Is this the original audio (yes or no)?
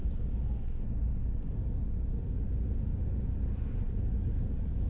yes